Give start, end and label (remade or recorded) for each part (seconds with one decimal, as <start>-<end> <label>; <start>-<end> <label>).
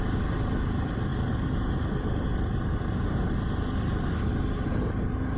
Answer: 0.0-5.4 recorded